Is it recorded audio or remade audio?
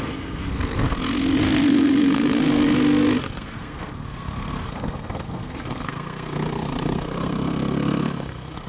remade